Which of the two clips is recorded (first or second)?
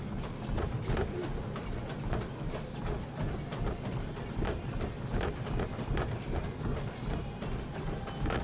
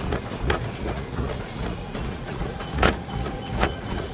first